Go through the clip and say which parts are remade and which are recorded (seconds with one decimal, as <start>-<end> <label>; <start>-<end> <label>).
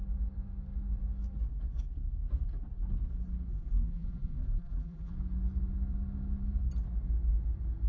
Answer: 0.0-3.5 recorded; 3.5-5.1 remade; 5.1-7.9 recorded